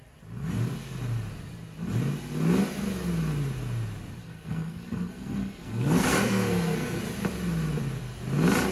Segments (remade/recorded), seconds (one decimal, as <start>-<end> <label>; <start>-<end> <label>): 0.0-4.2 recorded; 4.2-7.0 remade; 7.0-8.7 recorded